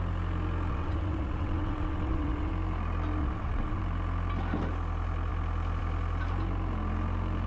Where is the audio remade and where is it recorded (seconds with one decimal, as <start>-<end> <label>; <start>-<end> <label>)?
0.0-0.7 recorded; 0.7-2.5 remade; 2.5-3.2 recorded; 3.2-3.8 remade; 3.8-7.5 recorded